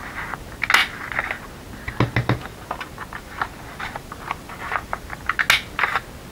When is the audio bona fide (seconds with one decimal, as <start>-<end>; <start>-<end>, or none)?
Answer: 0.0-6.3